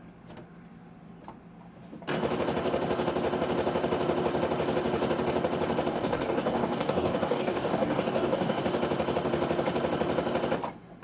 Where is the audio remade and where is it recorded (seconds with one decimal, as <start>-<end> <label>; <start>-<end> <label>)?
0.0-5.9 recorded; 5.9-8.6 remade; 8.6-11.0 recorded